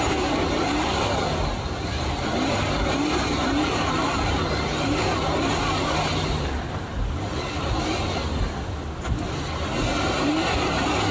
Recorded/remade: recorded